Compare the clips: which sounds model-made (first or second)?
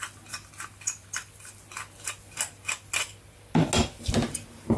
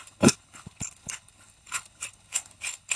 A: second